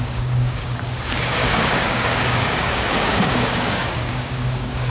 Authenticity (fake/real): fake